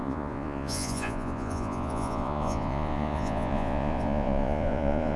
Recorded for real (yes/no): no